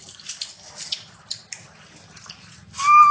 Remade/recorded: recorded